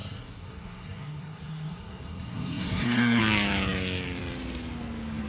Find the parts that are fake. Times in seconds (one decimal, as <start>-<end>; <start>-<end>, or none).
0.0-3.2